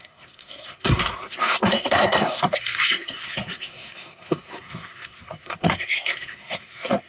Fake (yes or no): yes